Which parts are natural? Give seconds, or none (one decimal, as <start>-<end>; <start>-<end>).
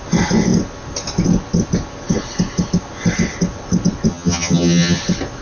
0.0-4.1; 5.0-5.4